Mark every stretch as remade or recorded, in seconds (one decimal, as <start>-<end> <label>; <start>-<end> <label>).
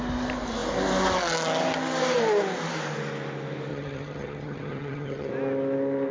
0.0-3.7 recorded; 3.7-5.3 remade; 5.3-6.1 recorded